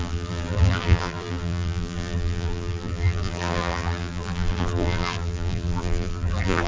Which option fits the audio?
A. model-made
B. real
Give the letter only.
A